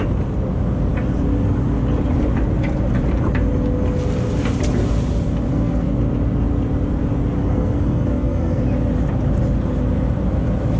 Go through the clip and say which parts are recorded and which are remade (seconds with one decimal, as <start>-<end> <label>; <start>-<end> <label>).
0.0-5.5 recorded; 5.5-6.0 remade; 6.0-7.4 recorded; 7.4-8.6 remade; 8.6-10.8 recorded